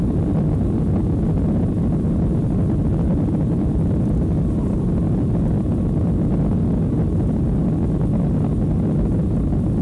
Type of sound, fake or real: real